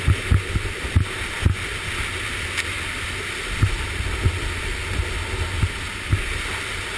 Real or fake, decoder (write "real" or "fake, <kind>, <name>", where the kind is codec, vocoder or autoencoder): real